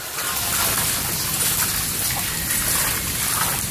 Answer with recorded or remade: recorded